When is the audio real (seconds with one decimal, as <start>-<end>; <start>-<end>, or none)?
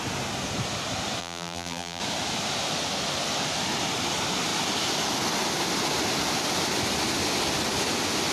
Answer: 0.0-1.2; 2.0-8.3